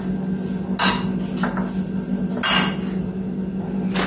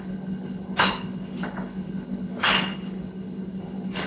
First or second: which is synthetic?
second